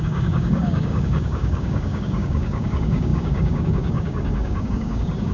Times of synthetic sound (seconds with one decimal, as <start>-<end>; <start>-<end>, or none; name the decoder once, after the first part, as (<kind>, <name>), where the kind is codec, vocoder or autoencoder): 0.0-5.3 (codec, DAC)